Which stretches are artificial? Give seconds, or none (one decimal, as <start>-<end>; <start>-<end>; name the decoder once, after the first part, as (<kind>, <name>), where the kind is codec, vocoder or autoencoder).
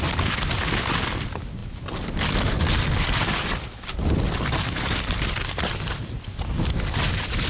none